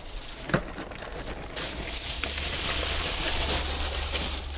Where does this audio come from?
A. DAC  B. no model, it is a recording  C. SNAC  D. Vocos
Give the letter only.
B